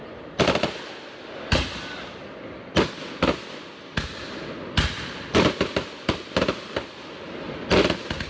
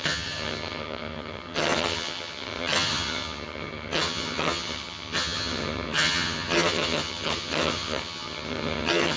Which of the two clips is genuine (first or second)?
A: first